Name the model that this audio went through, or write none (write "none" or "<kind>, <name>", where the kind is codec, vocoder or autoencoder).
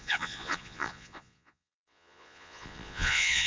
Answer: vocoder, Vocos